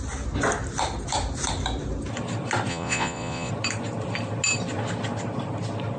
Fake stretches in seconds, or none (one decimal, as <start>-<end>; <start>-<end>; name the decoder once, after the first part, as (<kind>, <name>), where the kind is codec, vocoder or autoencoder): 2.7-3.5 (vocoder, Vocos)